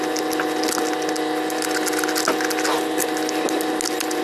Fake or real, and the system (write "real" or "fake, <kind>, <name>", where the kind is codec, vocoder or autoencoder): real